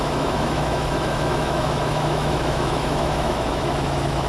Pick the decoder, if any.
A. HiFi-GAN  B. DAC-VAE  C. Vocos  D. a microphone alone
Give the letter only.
B